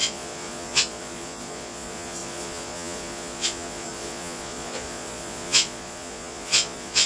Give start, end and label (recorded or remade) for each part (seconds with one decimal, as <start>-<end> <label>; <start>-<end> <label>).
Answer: 0.0-7.1 remade